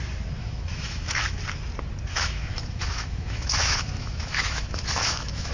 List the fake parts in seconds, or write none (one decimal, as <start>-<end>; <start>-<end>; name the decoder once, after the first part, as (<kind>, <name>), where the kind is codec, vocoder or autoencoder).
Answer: 0.4-1.4 (autoencoder, DAC-VAE); 2.1-5.5